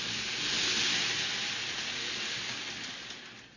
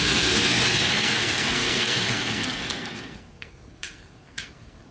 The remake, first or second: second